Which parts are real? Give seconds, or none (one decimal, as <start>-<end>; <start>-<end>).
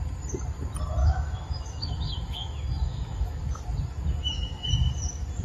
0.0-1.0; 3.4-4.2; 4.7-5.4